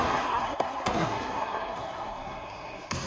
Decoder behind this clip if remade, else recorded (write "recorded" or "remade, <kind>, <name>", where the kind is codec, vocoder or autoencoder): remade, codec, SNAC